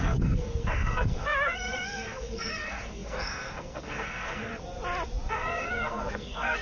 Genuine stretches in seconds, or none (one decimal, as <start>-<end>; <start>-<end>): 4.5-5.3